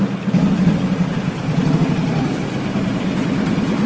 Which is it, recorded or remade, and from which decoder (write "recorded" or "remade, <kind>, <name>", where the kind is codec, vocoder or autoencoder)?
recorded